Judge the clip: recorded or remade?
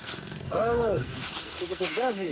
remade